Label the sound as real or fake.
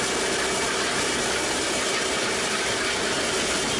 real